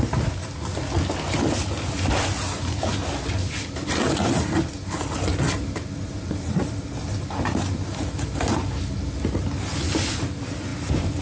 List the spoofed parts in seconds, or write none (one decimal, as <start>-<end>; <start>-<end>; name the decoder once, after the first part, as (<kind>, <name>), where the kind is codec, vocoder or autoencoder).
none